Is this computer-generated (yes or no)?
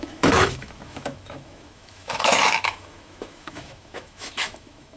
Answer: yes